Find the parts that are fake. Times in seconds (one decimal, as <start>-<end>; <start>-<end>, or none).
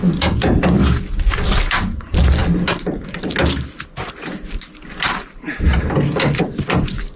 none